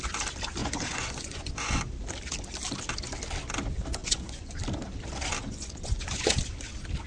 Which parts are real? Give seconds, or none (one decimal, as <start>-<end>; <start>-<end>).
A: 0.0-0.6; 1.8-4.0; 4.6-5.4; 6.4-7.1